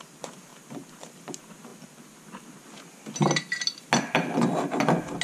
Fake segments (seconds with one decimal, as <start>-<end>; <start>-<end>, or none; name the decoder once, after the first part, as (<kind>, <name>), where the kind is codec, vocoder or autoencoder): none